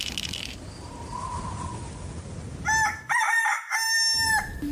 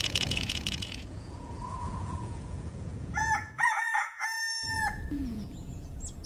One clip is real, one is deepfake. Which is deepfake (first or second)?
second